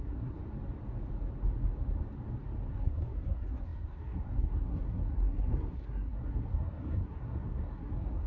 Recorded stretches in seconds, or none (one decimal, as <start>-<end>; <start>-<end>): 0.4-2.7